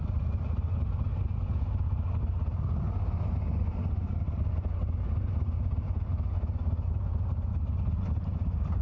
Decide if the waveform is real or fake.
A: real